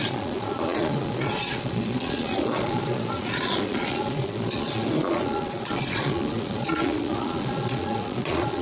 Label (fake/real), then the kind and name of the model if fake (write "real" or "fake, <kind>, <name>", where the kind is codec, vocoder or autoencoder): fake, vocoder, Vocos